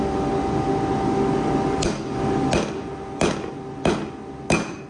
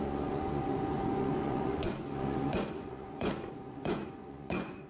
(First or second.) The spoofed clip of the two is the second